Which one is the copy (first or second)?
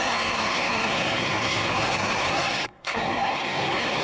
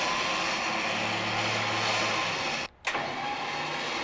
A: first